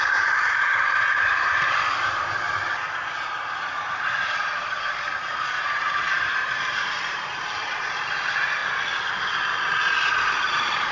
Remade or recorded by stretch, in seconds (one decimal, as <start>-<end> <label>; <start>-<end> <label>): 0.0-8.6 remade; 8.6-10.5 recorded; 10.5-10.9 remade